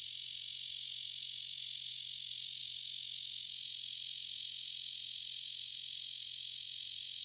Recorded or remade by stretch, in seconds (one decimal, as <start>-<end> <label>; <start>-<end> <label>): 0.0-7.2 recorded